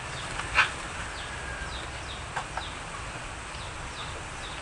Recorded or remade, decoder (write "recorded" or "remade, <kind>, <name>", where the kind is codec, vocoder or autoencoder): recorded